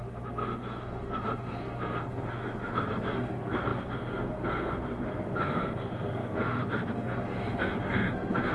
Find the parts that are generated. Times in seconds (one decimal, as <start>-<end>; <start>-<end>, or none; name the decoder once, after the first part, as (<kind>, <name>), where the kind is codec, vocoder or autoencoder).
0.0-8.5 (codec, SNAC)